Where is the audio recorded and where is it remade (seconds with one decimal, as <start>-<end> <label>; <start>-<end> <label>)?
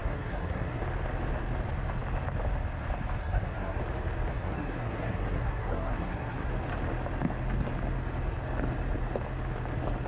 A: 0.0-0.8 remade; 0.8-3.2 recorded; 3.2-3.8 remade; 3.8-4.3 recorded; 4.3-6.5 remade; 6.5-10.1 recorded